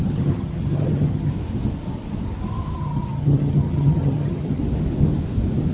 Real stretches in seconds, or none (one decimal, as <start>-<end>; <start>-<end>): 1.3-2.8; 4.6-5.7